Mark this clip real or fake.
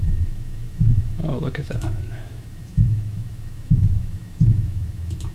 fake